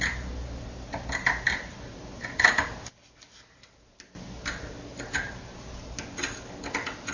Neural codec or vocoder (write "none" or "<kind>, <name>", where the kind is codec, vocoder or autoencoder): none